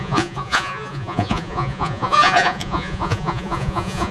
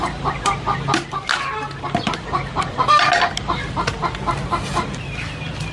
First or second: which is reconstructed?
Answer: first